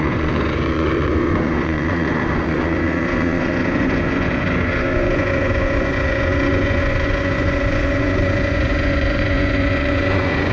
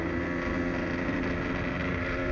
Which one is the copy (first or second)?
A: first